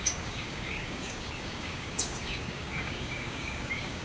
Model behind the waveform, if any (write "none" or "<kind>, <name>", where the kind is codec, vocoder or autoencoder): codec, DAC